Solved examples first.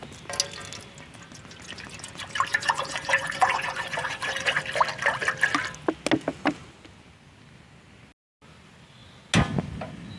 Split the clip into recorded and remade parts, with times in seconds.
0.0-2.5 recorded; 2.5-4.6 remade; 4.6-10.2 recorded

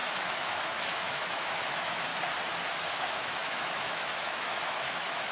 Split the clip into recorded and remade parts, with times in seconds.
0.0-2.1 remade; 2.1-3.0 recorded; 3.0-5.3 remade

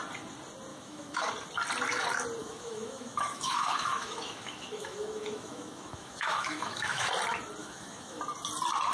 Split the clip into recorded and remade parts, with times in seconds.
0.0-0.7 recorded; 0.7-1.3 remade; 1.3-2.4 recorded; 2.4-7.1 remade; 7.1-7.6 recorded; 7.6-8.2 remade; 8.2-8.9 recorded